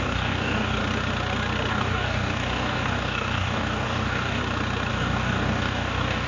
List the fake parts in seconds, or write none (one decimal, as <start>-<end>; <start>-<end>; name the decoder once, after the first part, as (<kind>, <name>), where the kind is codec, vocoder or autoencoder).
0.0-0.8 (codec, DAC); 1.7-4.4; 4.9-6.3